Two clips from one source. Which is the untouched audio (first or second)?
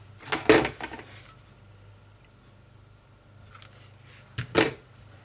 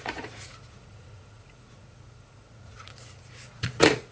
first